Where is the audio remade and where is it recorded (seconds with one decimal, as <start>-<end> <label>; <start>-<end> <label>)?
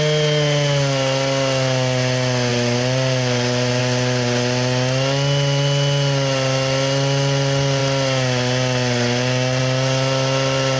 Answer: 0.0-2.5 recorded; 2.5-3.8 remade; 3.8-10.8 recorded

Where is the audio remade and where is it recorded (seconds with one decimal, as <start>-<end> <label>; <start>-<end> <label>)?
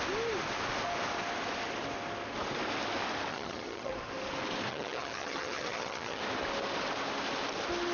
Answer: 0.0-3.3 recorded; 3.3-3.9 remade; 3.9-4.7 recorded; 4.7-6.2 remade; 6.2-7.9 recorded